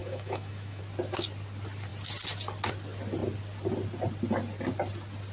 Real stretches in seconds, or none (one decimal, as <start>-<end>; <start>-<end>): 0.8-5.3